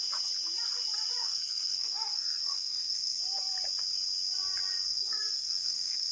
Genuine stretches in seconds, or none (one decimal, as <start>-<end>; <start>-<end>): 0.0-1.2; 3.2-4.9